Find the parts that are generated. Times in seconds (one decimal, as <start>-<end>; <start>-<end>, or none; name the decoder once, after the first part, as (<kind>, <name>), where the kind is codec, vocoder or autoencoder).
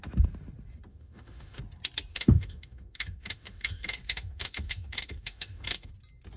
0.9-1.6 (autoencoder, DAC-VAE); 2.1-5.9